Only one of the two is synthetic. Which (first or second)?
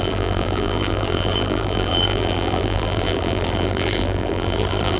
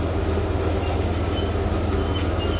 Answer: first